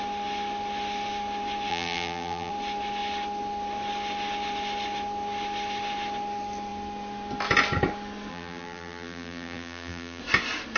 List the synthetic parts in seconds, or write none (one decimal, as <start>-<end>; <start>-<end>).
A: 1.7-2.5; 8.3-10.2